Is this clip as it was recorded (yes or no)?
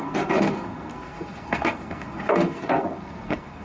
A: no